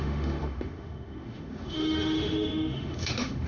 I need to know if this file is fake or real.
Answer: fake